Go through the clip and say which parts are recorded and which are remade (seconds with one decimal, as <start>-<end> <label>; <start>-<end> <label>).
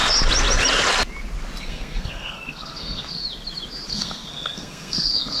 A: 0.0-1.6 recorded; 1.6-3.2 remade; 3.2-3.9 recorded; 3.9-5.4 remade